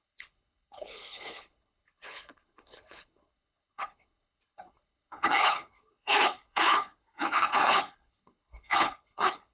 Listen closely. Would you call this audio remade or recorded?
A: remade